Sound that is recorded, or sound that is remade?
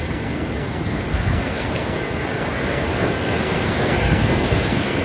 remade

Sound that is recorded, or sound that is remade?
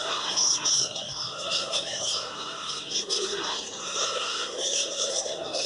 remade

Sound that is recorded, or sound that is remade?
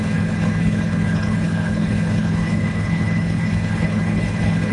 remade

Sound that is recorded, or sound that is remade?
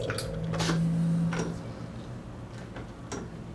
recorded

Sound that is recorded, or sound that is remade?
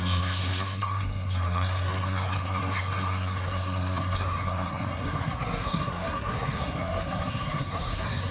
remade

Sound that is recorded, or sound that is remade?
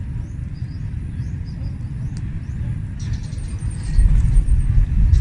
recorded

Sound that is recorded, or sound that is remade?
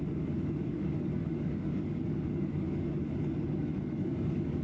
remade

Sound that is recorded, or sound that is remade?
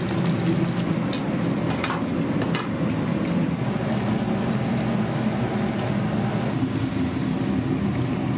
recorded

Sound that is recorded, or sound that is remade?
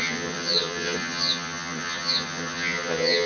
remade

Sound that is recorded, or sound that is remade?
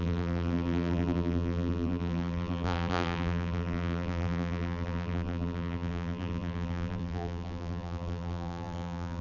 remade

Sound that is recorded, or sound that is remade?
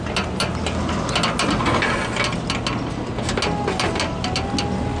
recorded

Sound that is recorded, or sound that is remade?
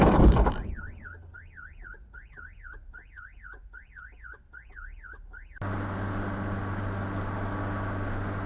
recorded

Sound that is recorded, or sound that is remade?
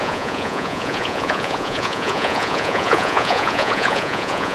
remade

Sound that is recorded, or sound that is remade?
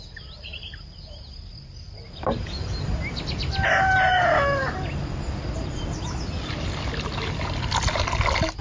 recorded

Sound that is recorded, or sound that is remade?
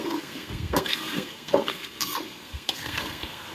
remade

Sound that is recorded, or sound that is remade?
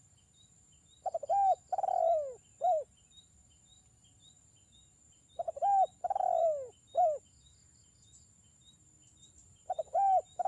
recorded